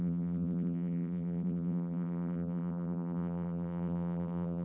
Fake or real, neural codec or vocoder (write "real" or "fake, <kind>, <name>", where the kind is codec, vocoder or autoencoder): fake, vocoder, BigVGAN v2